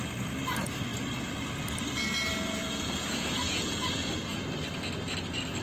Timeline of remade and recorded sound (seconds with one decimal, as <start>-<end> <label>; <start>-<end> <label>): 0.0-2.3 recorded; 2.3-4.1 remade; 4.1-5.6 recorded